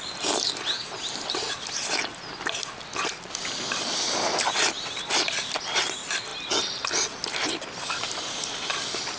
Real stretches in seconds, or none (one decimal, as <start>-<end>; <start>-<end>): 0.0-9.2